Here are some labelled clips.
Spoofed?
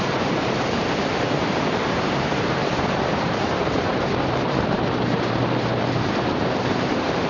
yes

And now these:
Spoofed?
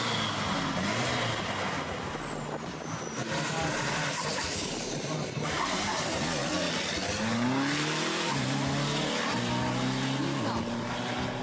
no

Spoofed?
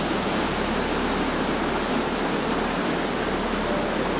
no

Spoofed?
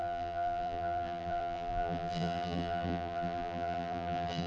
yes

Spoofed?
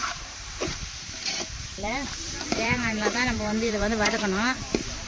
yes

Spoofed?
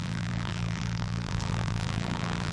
yes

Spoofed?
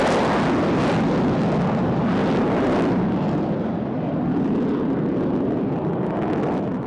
no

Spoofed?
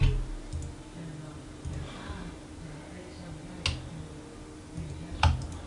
no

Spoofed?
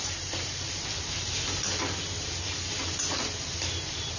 yes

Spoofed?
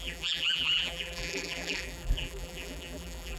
yes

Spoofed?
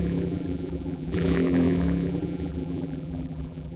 yes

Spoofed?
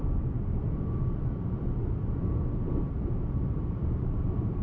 yes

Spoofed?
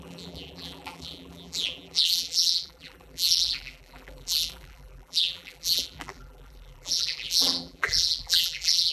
yes